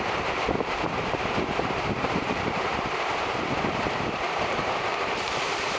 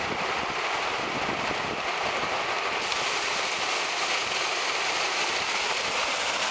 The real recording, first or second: second